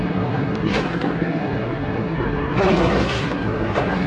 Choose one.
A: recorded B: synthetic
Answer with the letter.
B